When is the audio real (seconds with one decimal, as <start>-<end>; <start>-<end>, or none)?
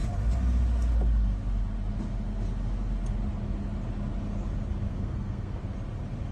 0.0-4.9; 5.6-6.3